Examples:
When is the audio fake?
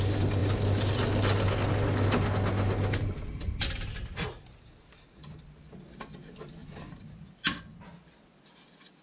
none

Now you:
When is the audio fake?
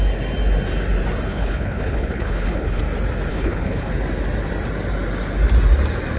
1.3-2.8 (codec, HILCodec); 3.3-3.9